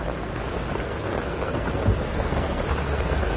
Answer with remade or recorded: remade